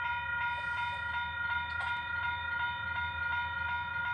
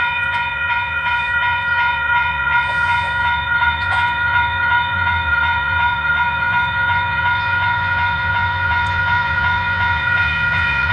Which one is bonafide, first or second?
first